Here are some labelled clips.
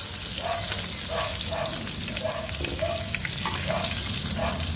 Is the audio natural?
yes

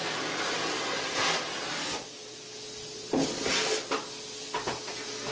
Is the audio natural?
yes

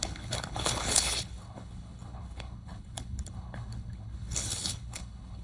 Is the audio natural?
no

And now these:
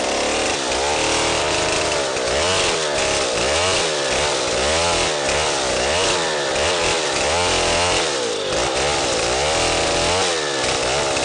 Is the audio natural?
yes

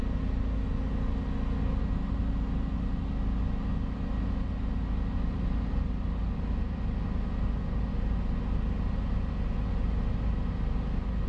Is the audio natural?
yes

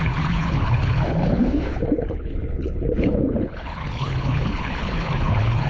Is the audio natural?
no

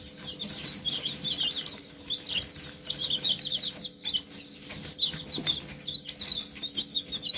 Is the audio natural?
yes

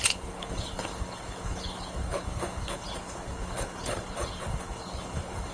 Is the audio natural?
no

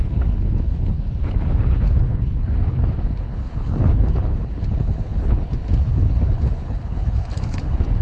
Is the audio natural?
no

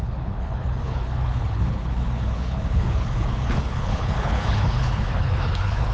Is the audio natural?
no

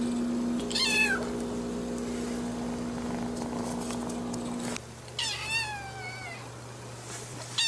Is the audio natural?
yes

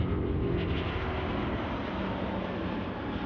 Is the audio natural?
yes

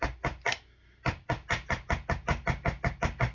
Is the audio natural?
yes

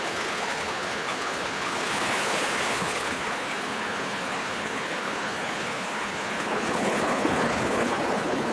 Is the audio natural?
no